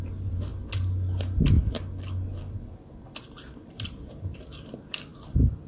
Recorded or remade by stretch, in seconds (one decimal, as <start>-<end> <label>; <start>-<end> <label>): 0.0-0.5 remade; 0.5-2.9 recorded; 2.9-5.1 remade; 5.1-5.7 recorded